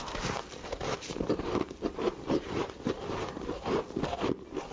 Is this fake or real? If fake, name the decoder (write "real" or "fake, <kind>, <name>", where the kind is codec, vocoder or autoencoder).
fake, vocoder, BigVGAN v2